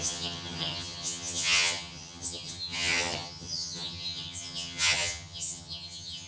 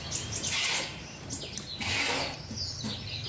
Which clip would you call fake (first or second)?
first